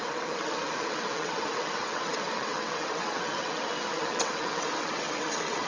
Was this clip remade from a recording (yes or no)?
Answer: yes